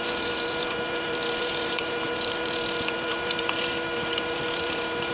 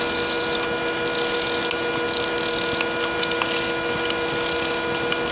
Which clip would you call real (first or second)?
second